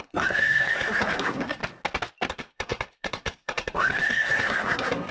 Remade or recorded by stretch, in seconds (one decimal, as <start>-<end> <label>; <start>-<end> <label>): 0.0-1.6 remade; 1.6-2.3 recorded; 2.3-5.1 remade